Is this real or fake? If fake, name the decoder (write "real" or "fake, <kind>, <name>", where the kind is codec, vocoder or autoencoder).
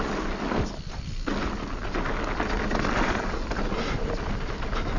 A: real